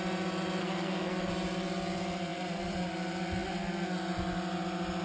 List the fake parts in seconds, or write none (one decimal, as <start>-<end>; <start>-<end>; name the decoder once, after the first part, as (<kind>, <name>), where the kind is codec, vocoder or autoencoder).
0.6-1.3 (codec, SNAC)